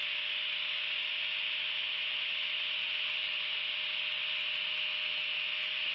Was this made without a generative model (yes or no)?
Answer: yes